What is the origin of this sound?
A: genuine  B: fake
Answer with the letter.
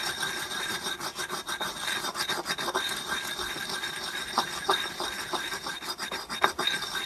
B